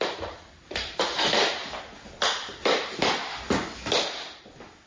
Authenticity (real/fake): real